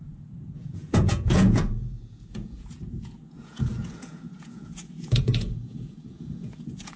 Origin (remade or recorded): remade